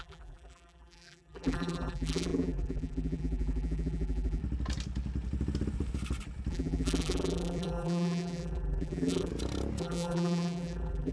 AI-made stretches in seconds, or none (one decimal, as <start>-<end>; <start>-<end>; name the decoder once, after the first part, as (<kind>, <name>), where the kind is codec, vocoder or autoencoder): 0.0-4.4 (vocoder, BigVGAN v2); 6.5-9.3; 9.8-11.1